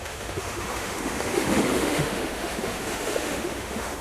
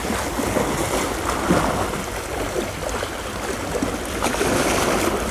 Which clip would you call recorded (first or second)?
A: second